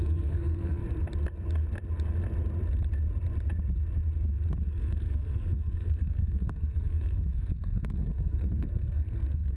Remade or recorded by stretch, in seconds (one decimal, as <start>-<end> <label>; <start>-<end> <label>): 0.0-0.8 remade; 0.8-4.8 recorded; 4.8-9.6 remade

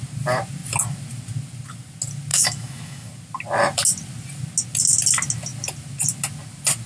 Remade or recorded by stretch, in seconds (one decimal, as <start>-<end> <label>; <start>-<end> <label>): 0.0-2.3 recorded; 2.3-3.1 remade; 3.1-6.9 recorded

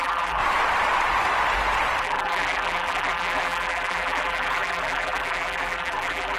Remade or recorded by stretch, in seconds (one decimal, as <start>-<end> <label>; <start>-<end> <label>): 0.0-0.4 remade; 0.4-2.0 recorded; 2.0-6.4 remade

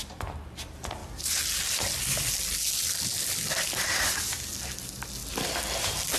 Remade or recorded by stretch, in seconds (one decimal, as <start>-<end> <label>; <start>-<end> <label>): 0.0-6.2 recorded